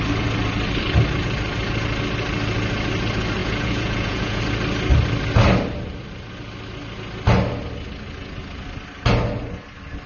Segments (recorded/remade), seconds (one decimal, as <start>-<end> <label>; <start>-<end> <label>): 0.0-3.4 recorded; 3.4-4.4 remade; 4.4-10.1 recorded